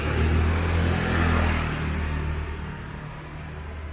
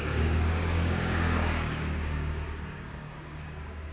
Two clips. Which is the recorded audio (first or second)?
first